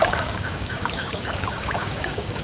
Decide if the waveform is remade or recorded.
remade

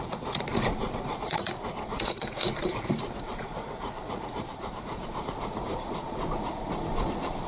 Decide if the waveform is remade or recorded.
remade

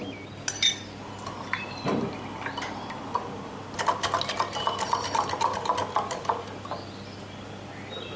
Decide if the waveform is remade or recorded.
recorded